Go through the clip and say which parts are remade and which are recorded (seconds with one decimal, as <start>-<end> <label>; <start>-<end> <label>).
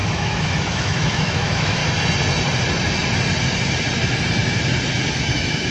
0.0-1.8 remade; 1.8-5.2 recorded; 5.2-5.7 remade